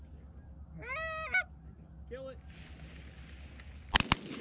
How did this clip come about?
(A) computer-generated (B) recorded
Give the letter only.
B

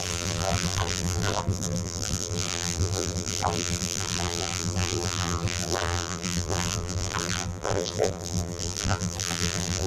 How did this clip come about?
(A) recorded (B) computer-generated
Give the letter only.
B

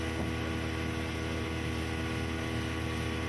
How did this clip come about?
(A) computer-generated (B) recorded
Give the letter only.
B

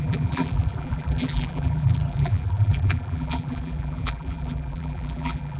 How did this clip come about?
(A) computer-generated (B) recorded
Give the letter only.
A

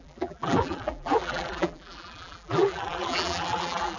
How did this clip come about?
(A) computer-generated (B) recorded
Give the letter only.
A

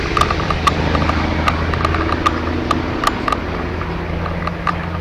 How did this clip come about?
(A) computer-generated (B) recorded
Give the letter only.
B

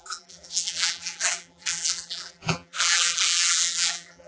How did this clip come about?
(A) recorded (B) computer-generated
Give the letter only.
B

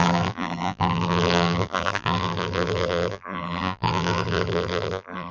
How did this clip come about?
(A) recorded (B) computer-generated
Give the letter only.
B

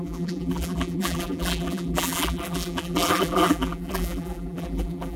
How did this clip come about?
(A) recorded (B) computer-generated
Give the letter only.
B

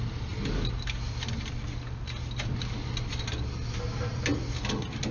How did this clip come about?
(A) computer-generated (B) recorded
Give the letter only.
B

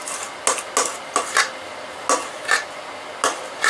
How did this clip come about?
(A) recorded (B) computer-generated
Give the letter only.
A